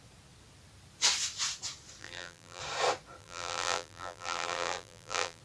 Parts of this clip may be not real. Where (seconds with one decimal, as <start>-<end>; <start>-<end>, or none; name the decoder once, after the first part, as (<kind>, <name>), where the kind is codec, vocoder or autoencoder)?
2.0-2.6 (vocoder, BigVGAN v2); 3.2-5.4